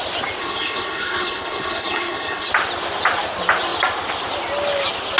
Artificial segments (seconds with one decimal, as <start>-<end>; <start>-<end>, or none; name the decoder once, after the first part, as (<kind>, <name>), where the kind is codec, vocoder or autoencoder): 0.4-2.5 (codec, HILCodec)